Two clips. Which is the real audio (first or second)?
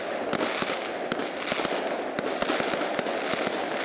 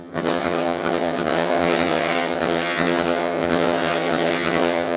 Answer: first